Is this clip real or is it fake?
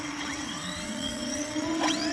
fake